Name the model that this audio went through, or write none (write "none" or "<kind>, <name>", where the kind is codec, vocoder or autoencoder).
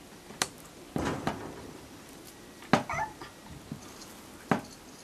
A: none